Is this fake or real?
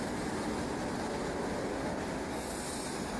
real